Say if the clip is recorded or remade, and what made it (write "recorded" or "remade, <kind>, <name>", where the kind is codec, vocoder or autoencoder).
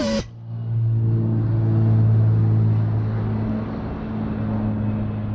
recorded